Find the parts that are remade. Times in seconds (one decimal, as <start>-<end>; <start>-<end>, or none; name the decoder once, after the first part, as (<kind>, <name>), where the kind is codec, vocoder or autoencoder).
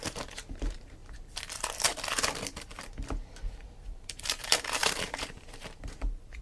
0.0-1.0 (vocoder, BigVGAN v2); 3.5-6.4